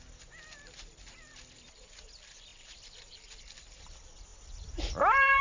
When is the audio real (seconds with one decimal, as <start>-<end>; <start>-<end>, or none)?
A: 2.5-3.4